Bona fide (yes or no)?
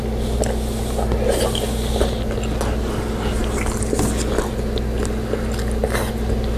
yes